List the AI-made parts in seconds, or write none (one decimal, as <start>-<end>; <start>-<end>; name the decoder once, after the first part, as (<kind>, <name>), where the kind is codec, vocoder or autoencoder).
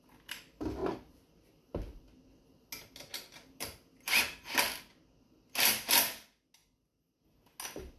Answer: none